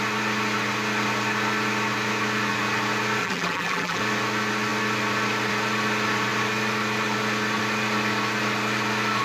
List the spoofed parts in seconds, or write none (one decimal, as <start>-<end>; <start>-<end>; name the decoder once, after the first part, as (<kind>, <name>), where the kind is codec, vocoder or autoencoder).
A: 3.2-4.0 (vocoder, BigVGAN v2)